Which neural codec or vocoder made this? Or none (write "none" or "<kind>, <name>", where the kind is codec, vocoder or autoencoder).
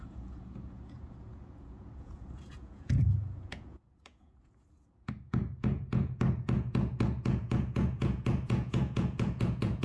vocoder, Vocos